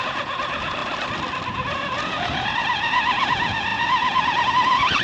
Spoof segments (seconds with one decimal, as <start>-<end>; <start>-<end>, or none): 0.0-0.8; 1.5-5.0